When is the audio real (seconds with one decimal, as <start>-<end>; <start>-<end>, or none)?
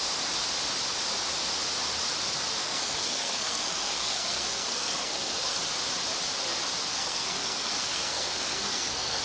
0.0-2.6; 5.6-6.9